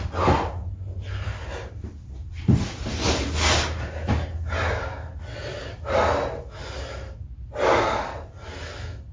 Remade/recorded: recorded